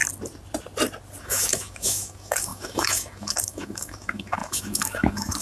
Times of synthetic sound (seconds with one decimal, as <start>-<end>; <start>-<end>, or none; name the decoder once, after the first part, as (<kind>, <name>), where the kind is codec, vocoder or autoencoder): 1.2-5.4 (autoencoder, DAC-VAE)